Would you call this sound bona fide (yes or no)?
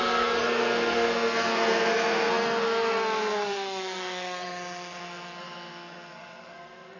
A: no